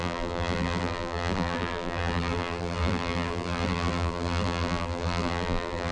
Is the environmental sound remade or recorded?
remade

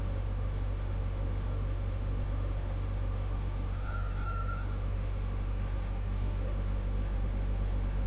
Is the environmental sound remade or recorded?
remade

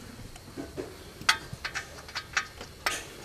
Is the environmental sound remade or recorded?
recorded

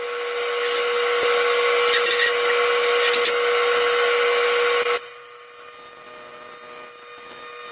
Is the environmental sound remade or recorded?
recorded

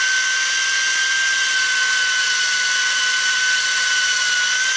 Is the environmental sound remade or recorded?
recorded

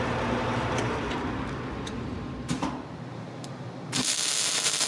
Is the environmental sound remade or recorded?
remade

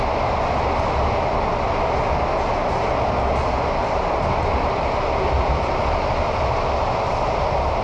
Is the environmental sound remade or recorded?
recorded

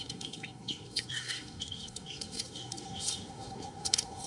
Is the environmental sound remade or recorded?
remade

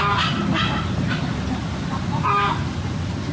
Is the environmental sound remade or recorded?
recorded